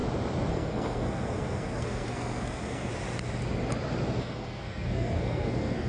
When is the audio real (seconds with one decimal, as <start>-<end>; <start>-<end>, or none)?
0.0-0.5; 2.9-4.2